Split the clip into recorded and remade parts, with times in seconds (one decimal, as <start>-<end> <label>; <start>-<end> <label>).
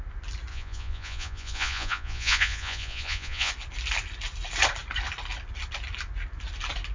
0.0-0.5 recorded; 0.5-3.5 remade; 3.5-6.9 recorded